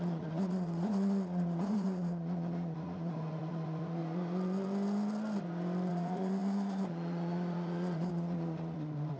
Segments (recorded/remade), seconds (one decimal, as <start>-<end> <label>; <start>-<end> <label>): 0.0-4.0 remade; 4.0-5.9 recorded; 5.9-9.2 remade